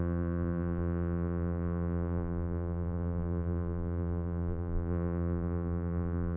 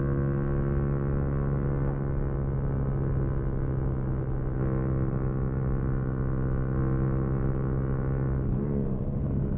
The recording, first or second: second